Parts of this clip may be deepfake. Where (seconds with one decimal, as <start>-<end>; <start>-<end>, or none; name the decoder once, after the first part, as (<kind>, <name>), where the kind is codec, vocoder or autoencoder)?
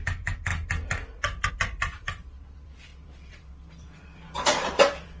0.0-0.5 (vocoder, BigVGAN v2); 1.5-5.2